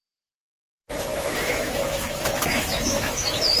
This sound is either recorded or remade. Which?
remade